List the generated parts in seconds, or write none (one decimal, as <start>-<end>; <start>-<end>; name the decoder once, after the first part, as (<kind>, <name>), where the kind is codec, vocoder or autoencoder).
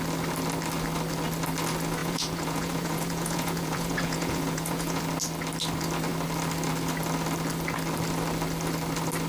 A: 2.0-5.0 (vocoder, Vocos)